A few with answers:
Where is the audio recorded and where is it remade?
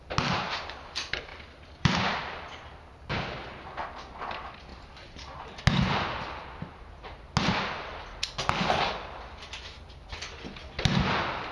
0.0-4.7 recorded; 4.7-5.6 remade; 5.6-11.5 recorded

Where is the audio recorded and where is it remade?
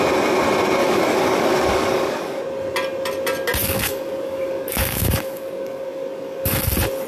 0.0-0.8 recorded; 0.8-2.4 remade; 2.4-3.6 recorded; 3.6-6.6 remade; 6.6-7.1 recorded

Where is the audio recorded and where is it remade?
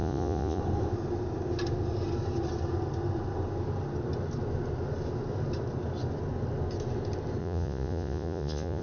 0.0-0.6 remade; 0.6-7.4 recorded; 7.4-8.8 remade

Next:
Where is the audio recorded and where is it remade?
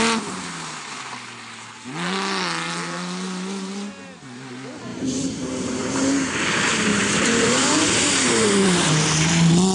0.0-4.9 recorded; 4.9-6.1 remade; 6.1-6.9 recorded; 6.9-8.9 remade; 8.9-9.7 recorded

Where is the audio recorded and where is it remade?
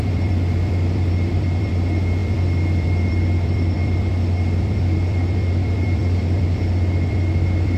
0.0-7.8 remade